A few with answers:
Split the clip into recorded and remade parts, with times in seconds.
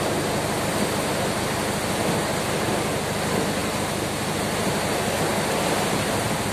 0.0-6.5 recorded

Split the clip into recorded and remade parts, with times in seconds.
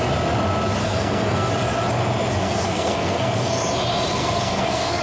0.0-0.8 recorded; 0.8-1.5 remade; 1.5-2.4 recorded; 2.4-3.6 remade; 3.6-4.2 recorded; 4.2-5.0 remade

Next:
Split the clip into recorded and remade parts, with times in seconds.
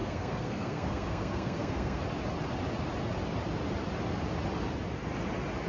0.0-2.0 remade; 2.0-5.7 recorded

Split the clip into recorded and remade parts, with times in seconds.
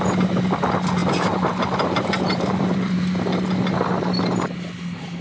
0.0-1.0 recorded; 1.0-2.9 remade; 2.9-5.2 recorded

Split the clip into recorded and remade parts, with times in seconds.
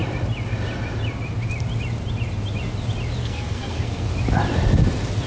0.0-3.2 recorded; 3.2-4.1 remade; 4.1-5.3 recorded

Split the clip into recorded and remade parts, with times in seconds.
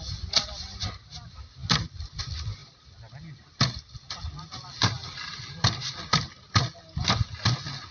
0.0-7.9 recorded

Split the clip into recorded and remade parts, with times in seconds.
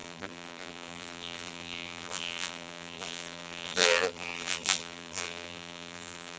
0.0-6.4 remade